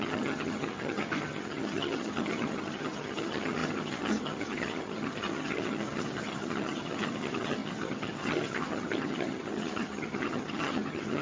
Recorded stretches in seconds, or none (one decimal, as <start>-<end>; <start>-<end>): none